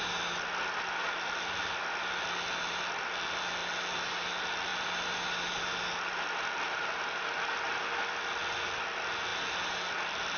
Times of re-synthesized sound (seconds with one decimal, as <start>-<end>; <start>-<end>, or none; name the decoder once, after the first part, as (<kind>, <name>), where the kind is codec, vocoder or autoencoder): none